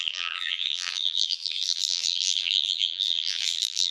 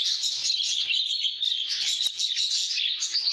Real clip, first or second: second